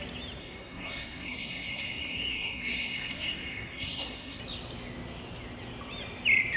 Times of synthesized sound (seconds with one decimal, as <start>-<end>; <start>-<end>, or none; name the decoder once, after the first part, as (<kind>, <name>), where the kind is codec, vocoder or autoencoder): 0.4-4.4 (codec, SNAC)